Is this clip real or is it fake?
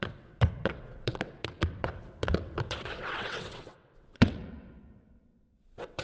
fake